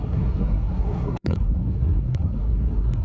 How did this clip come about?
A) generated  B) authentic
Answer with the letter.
A